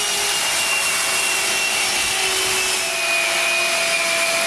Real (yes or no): yes